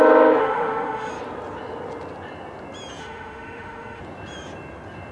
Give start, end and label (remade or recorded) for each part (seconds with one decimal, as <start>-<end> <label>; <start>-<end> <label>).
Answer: 0.0-0.4 recorded; 0.4-1.1 remade; 1.1-3.0 recorded; 3.0-4.0 remade; 4.0-5.1 recorded